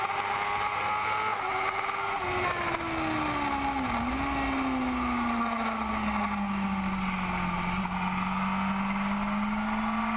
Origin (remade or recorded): recorded